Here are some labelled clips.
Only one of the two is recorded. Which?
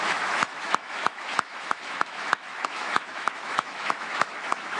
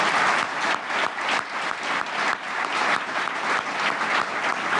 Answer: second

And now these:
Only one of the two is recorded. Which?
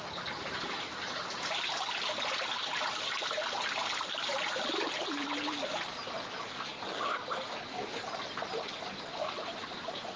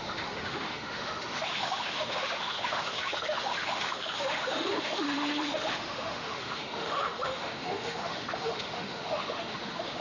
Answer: first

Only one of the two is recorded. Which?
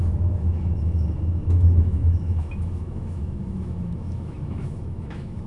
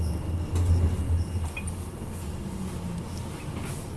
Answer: second